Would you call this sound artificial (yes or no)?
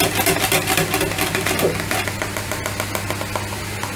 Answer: no